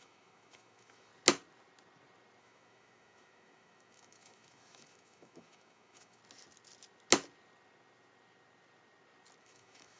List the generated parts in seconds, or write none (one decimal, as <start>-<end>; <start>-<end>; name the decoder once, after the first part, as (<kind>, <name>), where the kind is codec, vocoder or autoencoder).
0.0-1.1 (autoencoder, DAC-VAE); 2.4-6.2; 9.4-10.0